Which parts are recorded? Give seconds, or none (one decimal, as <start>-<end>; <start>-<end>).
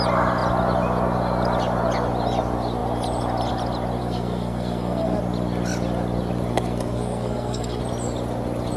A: 0.0-4.0; 5.2-6.5; 7.8-8.8